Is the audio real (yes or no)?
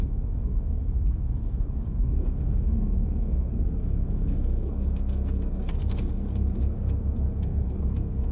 no